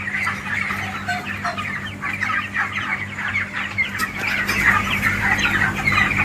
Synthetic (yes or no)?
no